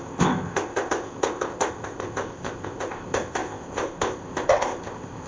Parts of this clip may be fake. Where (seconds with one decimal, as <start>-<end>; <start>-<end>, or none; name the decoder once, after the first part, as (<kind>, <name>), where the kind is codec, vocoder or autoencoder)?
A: 0.0-5.3 (codec, ZipCodec)

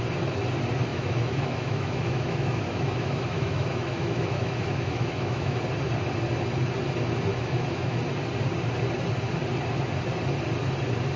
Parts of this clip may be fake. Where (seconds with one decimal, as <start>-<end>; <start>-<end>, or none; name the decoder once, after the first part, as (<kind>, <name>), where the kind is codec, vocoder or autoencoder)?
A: 0.9-5.6 (autoencoder, DAC-VAE); 7.3-8.0

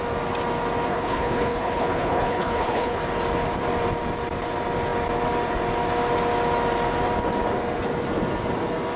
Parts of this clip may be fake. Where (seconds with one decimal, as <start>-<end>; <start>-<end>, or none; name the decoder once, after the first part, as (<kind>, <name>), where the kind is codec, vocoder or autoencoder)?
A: 0.9-3.0 (codec, HILCodec)

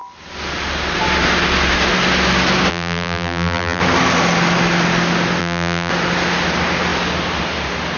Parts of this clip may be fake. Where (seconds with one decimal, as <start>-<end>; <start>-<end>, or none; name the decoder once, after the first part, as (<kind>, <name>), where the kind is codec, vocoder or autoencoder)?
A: 2.7-3.8 (vocoder, BigVGAN v2); 5.4-5.9

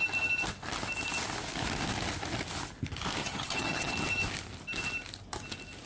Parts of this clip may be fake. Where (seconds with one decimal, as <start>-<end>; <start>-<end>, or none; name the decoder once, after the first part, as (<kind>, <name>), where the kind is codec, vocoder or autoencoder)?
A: 3.2-3.9 (vocoder, HiFi-GAN)

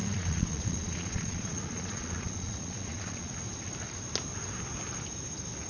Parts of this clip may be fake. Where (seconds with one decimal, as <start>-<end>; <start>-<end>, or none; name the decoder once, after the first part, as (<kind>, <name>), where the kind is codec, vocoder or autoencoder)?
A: 0.0-3.4 (vocoder, Vocos)

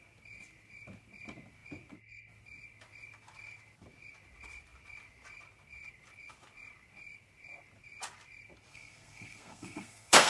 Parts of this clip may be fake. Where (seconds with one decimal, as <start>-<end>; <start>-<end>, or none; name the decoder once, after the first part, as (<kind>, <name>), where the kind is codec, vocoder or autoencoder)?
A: 8.7-10.3 (codec, SNAC)